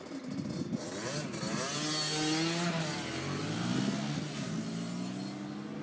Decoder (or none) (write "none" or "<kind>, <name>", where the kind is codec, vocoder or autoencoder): none